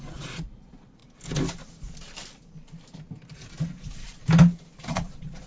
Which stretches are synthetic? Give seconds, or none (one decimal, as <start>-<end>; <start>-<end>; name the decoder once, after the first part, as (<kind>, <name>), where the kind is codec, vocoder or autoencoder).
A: 0.0-1.0 (vocoder, Vocos); 3.6-4.2; 4.9-5.5